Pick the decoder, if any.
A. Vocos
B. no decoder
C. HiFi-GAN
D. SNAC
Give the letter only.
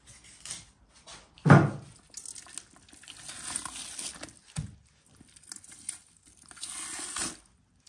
B